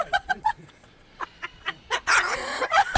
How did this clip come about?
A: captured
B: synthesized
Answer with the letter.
B